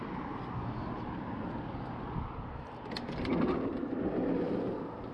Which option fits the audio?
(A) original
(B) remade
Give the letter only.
B